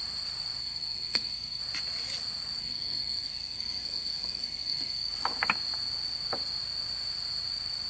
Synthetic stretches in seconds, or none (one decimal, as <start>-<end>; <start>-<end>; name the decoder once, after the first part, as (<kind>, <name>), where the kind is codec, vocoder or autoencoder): 0.6-1.6 (codec, SNAC); 2.6-5.1